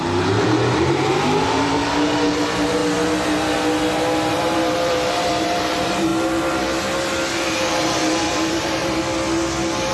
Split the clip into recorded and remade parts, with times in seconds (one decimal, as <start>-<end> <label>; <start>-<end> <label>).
0.0-2.8 remade; 2.8-4.3 recorded; 4.3-6.1 remade; 6.1-7.5 recorded; 7.5-8.8 remade; 8.8-9.9 recorded